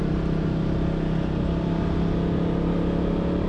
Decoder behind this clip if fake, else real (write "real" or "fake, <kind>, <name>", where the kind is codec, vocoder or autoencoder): real